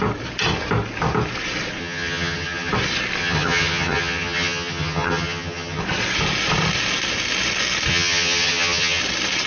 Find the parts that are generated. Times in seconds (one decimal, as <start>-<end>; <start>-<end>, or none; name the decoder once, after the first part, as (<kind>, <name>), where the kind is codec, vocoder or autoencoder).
1.8-2.7 (vocoder, HiFi-GAN); 3.2-5.8; 7.9-9.0